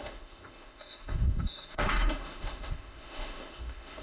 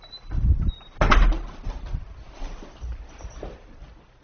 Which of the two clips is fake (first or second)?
first